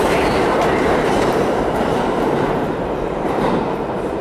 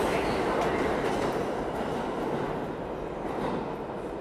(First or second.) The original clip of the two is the second